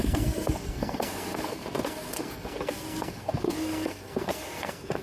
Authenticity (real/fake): fake